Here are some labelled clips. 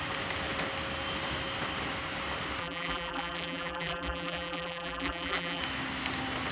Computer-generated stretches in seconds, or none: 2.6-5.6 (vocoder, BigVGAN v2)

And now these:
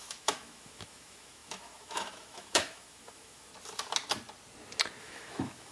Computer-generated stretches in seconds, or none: 0.0-3.5 (autoencoder, DAC-VAE); 5.0-5.7